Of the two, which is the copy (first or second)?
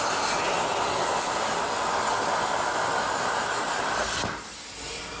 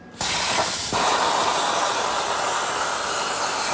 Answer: second